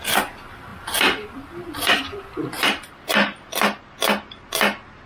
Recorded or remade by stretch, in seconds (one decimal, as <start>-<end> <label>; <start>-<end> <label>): 0.0-0.7 recorded; 0.7-3.8 remade; 3.8-5.1 recorded